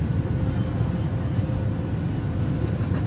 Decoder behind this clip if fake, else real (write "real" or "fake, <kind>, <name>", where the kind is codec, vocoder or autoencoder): real